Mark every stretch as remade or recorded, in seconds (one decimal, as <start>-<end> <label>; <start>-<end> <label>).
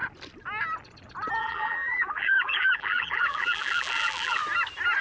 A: 0.0-1.4 recorded; 1.4-4.4 remade; 4.4-5.0 recorded